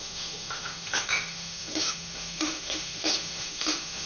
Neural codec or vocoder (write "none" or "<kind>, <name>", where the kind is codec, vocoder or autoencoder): autoencoder, DAC-VAE